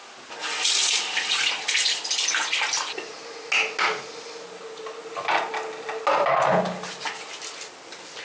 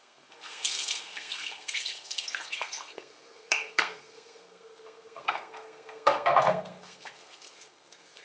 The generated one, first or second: second